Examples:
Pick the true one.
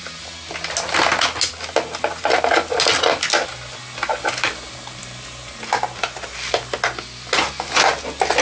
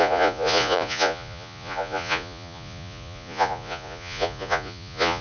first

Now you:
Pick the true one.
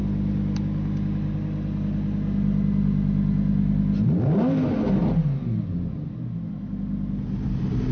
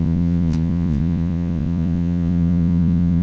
first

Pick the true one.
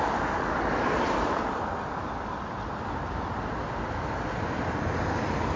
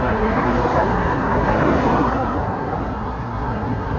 first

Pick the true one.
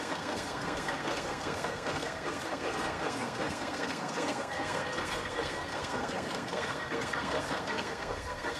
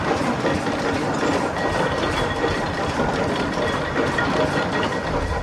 second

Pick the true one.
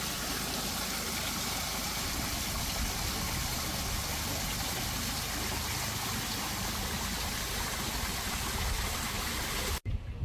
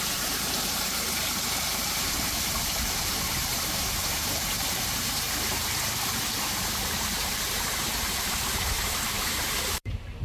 first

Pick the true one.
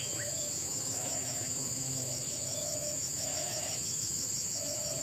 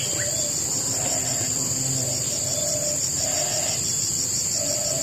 second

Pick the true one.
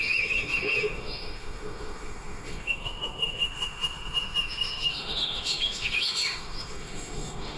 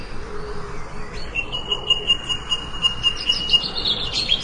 second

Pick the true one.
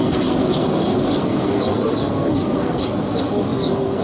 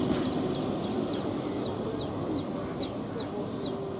second